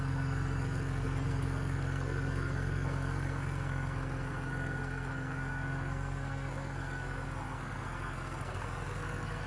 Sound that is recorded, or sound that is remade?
remade